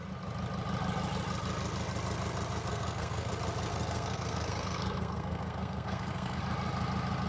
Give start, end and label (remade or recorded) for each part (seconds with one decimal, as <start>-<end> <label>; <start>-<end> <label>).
0.0-2.7 recorded; 2.7-3.3 remade; 3.3-3.7 recorded; 3.7-6.4 remade; 6.4-7.3 recorded